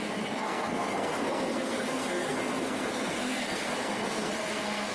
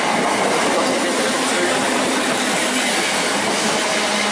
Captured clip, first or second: second